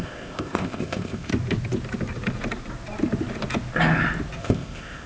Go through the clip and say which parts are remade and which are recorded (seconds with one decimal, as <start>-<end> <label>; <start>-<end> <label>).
0.0-1.3 remade; 1.3-4.4 recorded; 4.4-5.1 remade

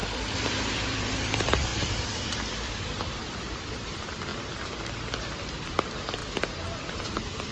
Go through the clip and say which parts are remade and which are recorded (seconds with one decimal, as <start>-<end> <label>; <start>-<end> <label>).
0.0-6.2 remade; 6.2-7.0 recorded; 7.0-7.5 remade

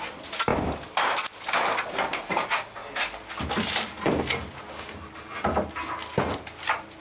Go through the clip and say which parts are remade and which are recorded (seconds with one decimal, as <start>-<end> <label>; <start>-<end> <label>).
0.0-7.0 recorded

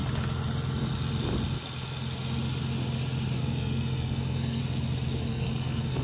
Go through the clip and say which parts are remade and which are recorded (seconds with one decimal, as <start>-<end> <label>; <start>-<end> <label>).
0.0-3.4 recorded; 3.4-4.6 remade; 4.6-5.2 recorded; 5.2-6.0 remade

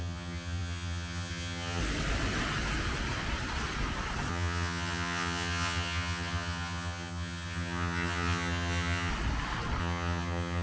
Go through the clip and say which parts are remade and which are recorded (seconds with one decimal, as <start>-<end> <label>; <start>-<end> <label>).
0.0-1.8 remade; 1.8-4.3 recorded; 4.3-9.1 remade; 9.1-9.8 recorded; 9.8-10.6 remade